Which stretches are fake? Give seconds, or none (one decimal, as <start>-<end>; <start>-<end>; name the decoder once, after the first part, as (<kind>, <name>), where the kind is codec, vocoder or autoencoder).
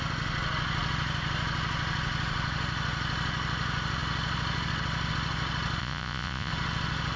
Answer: 5.8-6.5 (vocoder, Vocos)